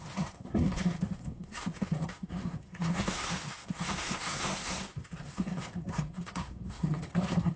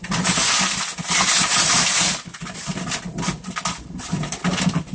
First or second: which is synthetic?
first